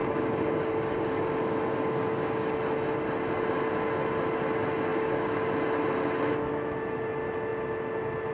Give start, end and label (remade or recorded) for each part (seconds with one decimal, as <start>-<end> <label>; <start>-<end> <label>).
0.0-2.5 remade; 2.5-4.9 recorded; 4.9-5.5 remade; 5.5-8.3 recorded